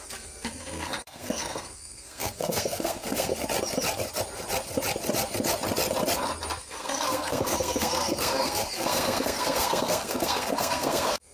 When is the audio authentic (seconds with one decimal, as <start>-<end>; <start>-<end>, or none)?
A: 3.3-6.6